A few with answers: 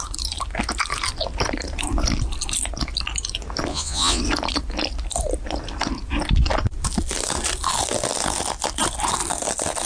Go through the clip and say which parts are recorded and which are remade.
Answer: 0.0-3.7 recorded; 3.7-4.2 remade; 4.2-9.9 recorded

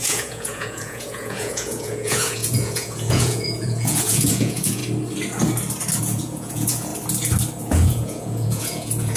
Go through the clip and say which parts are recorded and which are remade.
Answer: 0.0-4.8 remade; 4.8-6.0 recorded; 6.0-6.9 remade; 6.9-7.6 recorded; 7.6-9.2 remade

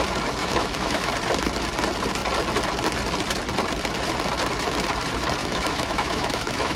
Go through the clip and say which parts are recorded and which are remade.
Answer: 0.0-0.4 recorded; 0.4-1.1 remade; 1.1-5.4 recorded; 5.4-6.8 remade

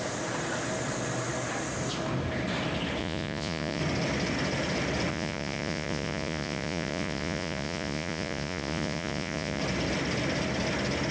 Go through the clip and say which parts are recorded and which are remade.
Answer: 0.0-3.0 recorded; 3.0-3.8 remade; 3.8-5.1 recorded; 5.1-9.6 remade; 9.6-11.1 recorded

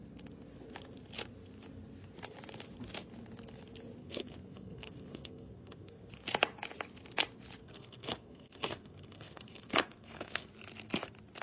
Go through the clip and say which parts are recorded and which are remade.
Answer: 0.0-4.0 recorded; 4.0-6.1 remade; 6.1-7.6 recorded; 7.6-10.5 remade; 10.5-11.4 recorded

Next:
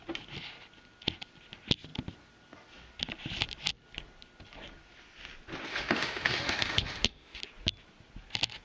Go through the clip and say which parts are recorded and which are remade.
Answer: 0.0-5.7 recorded; 5.7-7.4 remade; 7.4-8.6 recorded

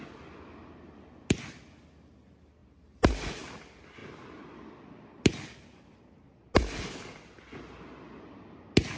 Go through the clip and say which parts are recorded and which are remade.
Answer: 0.0-9.0 recorded